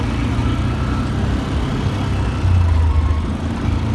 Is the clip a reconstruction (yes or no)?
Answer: no